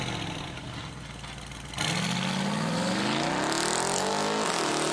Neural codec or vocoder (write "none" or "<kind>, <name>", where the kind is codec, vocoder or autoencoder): none